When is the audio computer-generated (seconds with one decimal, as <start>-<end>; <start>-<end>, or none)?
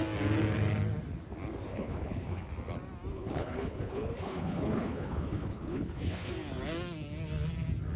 1.7-2.5; 3.1-6.3